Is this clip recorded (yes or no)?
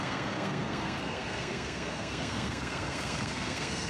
no